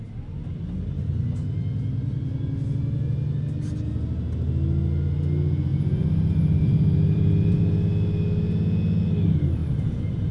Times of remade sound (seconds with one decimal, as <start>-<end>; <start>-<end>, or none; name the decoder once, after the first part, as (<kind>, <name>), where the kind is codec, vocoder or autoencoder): 5.7-7.6 (vocoder, BigVGAN v2); 9.6-10.3